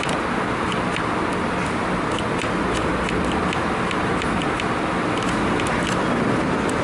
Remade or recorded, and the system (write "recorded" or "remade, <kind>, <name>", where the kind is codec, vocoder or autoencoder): recorded